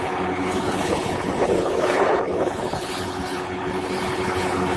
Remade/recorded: remade